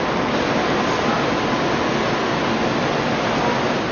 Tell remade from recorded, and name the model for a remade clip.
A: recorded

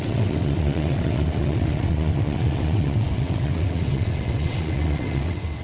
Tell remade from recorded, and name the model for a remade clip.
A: remade, vocoder, WaveNeXt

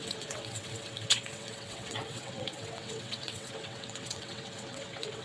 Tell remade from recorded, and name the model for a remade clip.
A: remade, vocoder, WaveNeXt